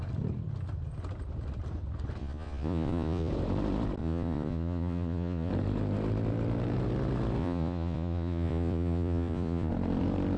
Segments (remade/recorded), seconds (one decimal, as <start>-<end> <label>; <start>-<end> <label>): 0.0-2.2 recorded; 2.2-3.3 remade; 3.3-4.0 recorded; 4.0-5.5 remade; 5.5-7.4 recorded; 7.4-9.7 remade; 9.7-10.4 recorded